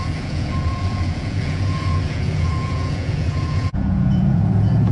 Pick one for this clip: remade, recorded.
remade